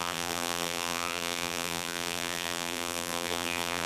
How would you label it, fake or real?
fake